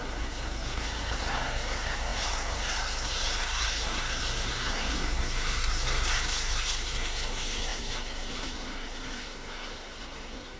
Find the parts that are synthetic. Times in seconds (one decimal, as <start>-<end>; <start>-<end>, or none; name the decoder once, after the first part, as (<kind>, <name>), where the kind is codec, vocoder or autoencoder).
0.0-10.6 (codec, SNAC)